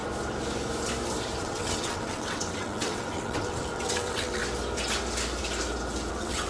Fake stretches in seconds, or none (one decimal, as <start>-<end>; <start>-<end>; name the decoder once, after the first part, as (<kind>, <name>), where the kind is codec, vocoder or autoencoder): 1.4-4.4 (vocoder, WaveNeXt); 6.1-6.5